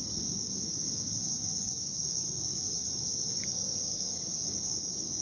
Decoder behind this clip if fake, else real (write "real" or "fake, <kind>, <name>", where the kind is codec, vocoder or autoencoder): fake, codec, DAC